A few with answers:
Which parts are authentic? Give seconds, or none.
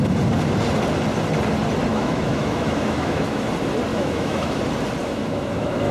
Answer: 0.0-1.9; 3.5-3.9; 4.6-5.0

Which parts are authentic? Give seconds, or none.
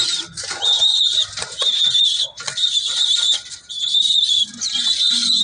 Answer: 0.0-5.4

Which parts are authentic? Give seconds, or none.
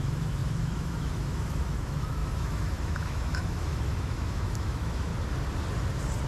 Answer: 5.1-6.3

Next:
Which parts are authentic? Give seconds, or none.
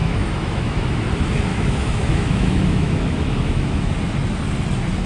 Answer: 1.0-1.5; 3.9-5.1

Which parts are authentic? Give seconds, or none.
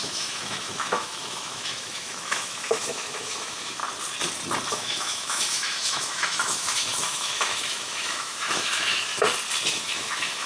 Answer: 3.8-4.7; 9.1-9.7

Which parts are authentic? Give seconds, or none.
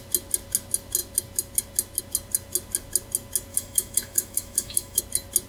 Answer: 0.0-3.5; 5.0-5.5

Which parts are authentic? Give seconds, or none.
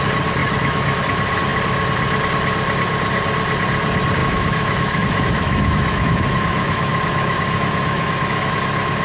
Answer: 0.0-0.4; 1.0-4.2; 8.5-9.0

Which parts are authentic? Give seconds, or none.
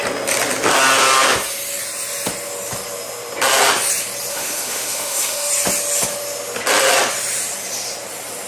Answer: 0.0-4.3; 5.5-8.5